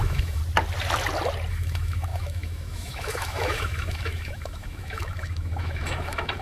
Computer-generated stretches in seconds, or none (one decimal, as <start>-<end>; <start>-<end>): 0.0-0.4; 1.5-6.4